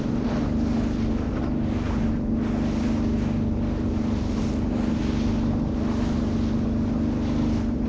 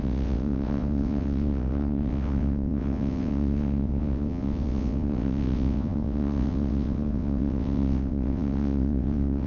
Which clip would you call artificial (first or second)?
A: second